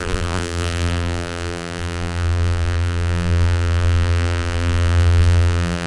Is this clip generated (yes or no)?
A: yes